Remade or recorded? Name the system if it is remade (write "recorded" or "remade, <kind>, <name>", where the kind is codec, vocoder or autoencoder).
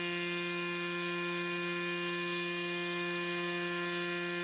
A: recorded